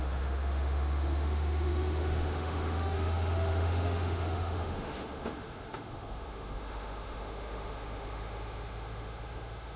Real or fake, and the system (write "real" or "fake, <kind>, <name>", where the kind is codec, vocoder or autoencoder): fake, autoencoder, DAC-VAE